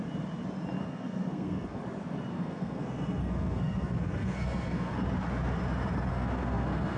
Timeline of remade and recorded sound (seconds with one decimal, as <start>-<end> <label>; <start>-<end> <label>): 0.0-0.8 recorded; 0.8-1.8 remade; 1.8-2.3 recorded; 2.3-4.9 remade; 4.9-6.1 recorded; 6.1-7.0 remade